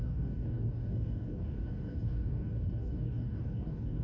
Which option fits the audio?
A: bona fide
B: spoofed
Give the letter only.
B